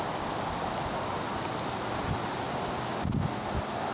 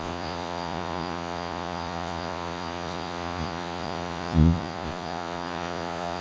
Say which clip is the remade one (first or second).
second